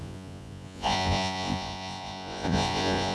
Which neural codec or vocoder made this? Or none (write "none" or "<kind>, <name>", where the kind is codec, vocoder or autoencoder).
vocoder, Vocos